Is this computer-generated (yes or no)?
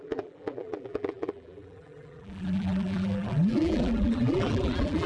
yes